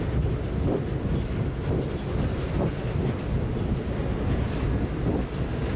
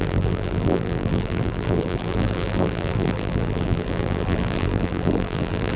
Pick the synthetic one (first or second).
second